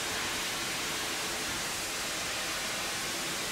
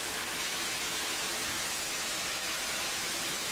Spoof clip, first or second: second